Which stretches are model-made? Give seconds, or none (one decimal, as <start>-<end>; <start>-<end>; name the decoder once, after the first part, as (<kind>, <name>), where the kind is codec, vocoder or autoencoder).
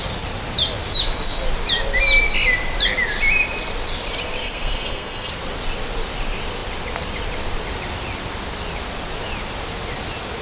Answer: 4.4-5.3 (codec, SNAC)